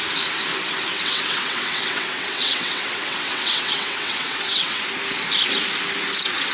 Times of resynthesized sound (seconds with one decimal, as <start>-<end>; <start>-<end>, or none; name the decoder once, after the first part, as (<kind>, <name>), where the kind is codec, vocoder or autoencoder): 0.9-4.8 (vocoder, WaveNeXt)